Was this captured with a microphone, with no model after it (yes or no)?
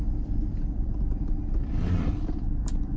no